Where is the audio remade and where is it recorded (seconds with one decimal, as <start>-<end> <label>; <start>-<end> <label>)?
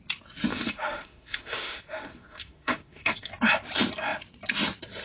0.0-0.5 recorded; 0.5-3.3 remade; 3.3-5.0 recorded